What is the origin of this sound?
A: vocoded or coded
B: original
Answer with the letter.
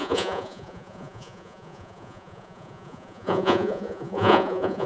A